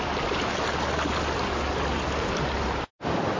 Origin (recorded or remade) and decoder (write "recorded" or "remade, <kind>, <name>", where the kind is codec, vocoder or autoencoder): recorded